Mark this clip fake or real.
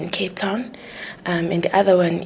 real